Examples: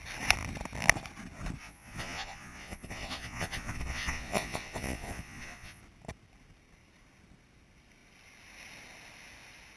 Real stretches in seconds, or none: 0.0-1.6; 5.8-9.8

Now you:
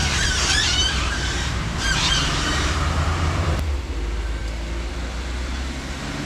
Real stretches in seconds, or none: 3.8-6.3

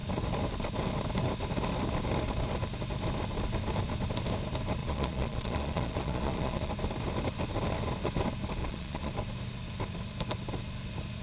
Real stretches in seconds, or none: 0.0-4.8; 6.7-8.6; 9.1-11.2

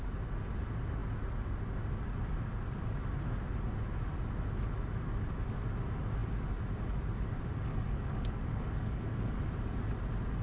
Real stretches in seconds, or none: 0.0-7.7; 9.4-10.4

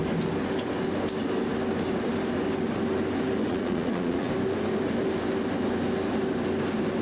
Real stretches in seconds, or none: 0.0-3.5; 4.3-7.0

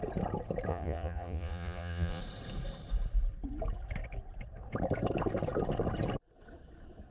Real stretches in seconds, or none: 0.0-0.7; 2.2-7.1